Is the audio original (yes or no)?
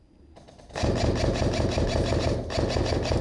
yes